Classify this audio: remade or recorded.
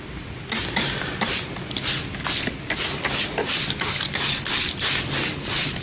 recorded